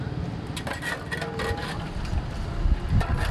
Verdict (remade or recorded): recorded